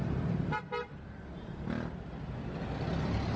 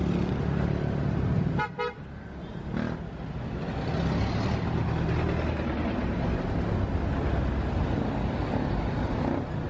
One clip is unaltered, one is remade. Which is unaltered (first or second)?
second